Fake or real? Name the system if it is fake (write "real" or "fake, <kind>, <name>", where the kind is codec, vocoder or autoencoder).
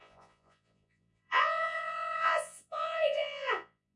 fake, vocoder, Vocos